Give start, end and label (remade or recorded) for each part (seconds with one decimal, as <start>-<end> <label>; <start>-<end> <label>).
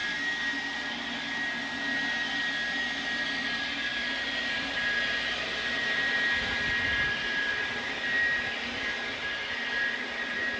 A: 0.0-3.9 recorded; 3.9-4.8 remade; 4.8-10.6 recorded